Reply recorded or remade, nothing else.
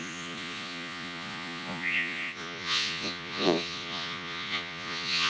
remade